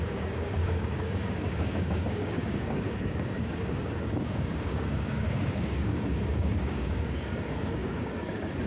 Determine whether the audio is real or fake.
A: fake